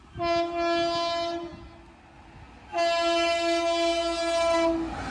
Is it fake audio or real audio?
real